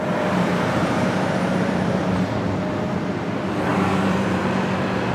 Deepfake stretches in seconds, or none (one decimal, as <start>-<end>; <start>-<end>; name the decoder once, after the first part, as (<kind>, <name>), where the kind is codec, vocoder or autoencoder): 0.5-2.0 (vocoder, BigVGAN v2); 3.7-4.4